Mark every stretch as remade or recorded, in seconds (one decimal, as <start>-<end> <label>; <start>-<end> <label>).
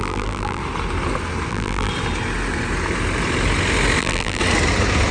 0.0-0.6 remade; 0.6-1.5 recorded; 1.5-1.9 remade; 1.9-4.0 recorded; 4.0-4.4 remade; 4.4-5.1 recorded